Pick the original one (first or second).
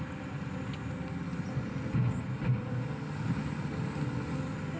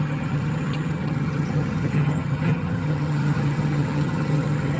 first